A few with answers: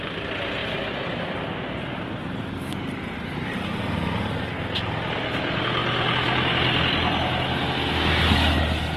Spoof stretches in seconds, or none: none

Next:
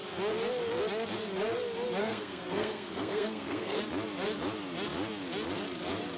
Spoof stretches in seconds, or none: 2.0-3.8